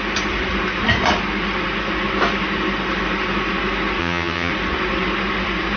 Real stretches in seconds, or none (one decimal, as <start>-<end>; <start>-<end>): 0.0-4.0; 4.5-5.8